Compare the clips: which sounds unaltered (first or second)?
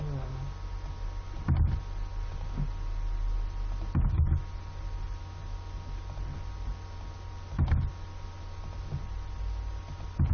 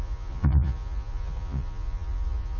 first